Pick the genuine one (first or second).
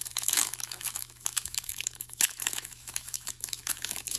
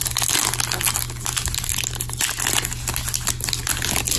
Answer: second